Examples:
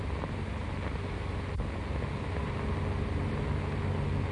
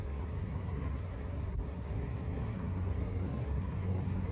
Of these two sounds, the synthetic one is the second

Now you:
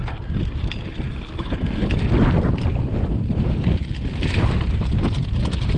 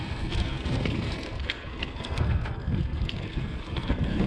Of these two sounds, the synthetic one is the second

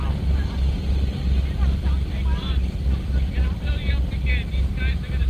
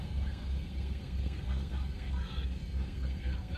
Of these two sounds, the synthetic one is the second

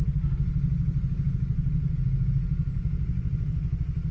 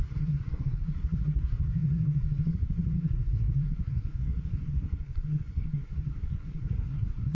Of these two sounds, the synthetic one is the second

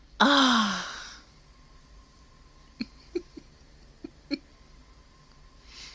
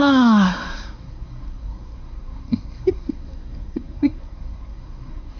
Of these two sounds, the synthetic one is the second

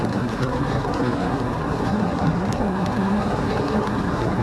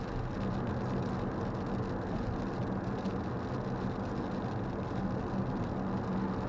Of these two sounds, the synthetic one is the first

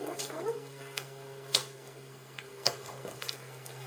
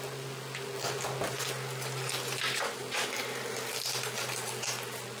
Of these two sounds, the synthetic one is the first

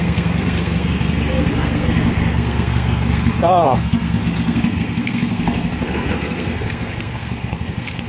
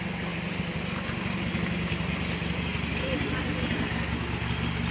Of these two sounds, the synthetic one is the first